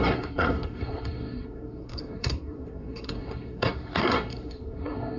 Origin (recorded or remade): remade